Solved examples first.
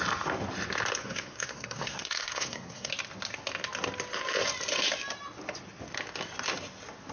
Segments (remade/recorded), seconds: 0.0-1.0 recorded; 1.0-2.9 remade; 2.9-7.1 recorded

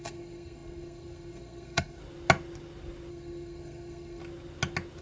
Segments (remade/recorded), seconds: 0.0-2.0 remade; 2.0-3.1 recorded; 3.1-4.2 remade; 4.2-5.0 recorded